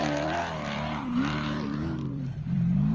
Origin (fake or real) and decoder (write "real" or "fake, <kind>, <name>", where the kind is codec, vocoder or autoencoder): fake, vocoder, BigVGAN v2